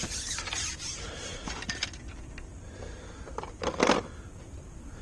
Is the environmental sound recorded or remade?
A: remade